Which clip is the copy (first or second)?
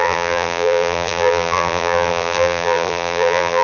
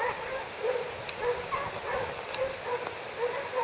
first